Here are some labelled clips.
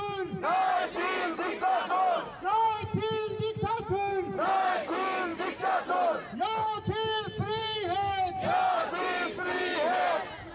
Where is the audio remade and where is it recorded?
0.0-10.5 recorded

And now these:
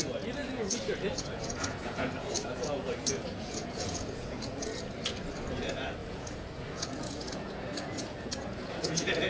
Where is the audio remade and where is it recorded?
0.0-0.4 recorded; 0.4-4.8 remade; 4.8-6.0 recorded; 6.0-9.3 remade

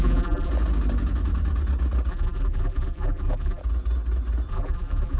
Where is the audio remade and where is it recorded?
0.0-0.5 remade; 0.5-2.1 recorded; 2.1-3.6 remade; 3.6-4.5 recorded; 4.5-5.2 remade